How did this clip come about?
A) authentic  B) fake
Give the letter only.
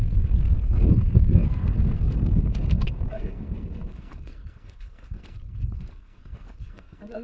B